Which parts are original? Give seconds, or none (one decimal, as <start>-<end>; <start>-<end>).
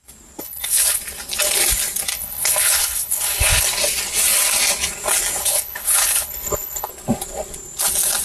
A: 0.0-0.4; 1.0-2.1; 3.6-5.4; 6.9-8.2